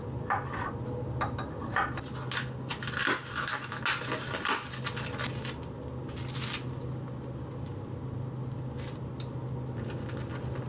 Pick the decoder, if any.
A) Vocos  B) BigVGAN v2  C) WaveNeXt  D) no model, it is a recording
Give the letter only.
D